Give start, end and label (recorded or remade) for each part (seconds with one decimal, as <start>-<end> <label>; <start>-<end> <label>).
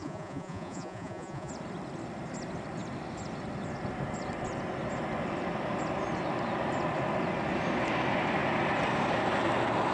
0.0-1.5 remade; 1.5-9.9 recorded